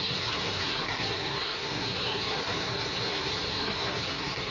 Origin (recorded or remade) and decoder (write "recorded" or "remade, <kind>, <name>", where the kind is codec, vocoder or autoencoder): remade, codec, SNAC